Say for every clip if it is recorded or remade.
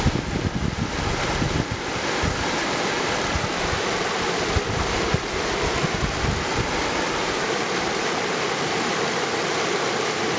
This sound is recorded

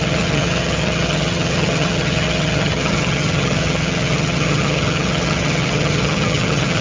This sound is remade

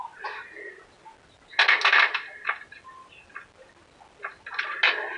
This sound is recorded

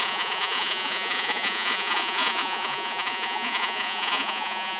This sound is remade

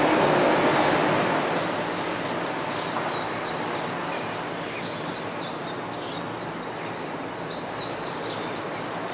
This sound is recorded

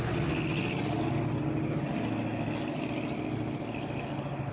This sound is recorded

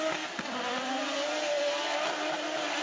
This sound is recorded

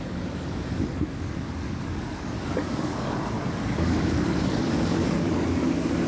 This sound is remade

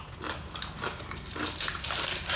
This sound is recorded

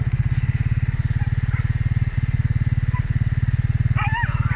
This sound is recorded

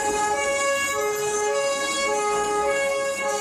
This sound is remade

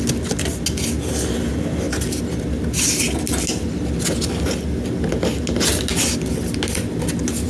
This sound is recorded